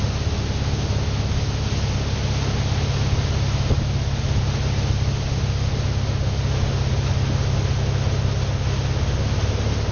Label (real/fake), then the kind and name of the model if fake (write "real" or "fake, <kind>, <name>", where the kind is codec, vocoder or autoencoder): real